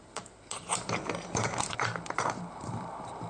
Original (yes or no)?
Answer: no